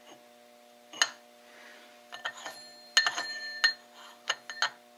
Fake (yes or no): no